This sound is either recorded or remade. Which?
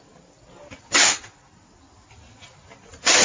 recorded